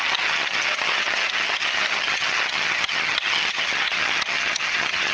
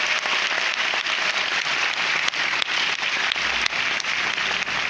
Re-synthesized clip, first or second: first